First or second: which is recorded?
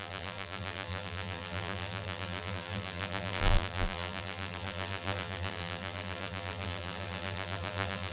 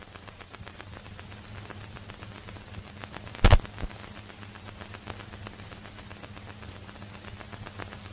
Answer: second